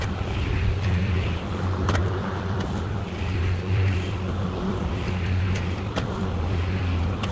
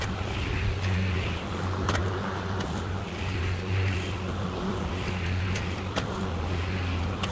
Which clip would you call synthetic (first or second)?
first